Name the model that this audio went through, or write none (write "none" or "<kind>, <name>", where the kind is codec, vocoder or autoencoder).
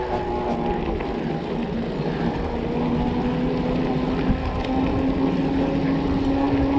none